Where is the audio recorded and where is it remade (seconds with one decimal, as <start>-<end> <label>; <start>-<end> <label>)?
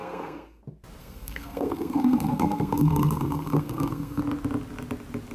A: 0.0-0.6 remade; 0.6-1.0 recorded; 1.0-4.2 remade; 4.2-5.3 recorded